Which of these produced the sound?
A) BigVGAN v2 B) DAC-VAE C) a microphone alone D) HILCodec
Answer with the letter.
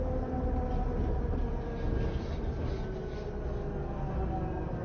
C